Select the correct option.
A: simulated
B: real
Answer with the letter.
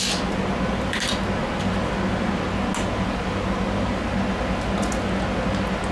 B